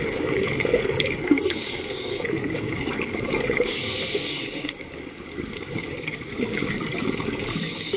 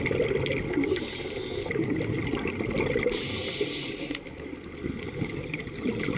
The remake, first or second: first